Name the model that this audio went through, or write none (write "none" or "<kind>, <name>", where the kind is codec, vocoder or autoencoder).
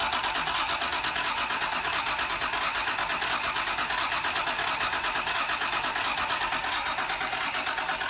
none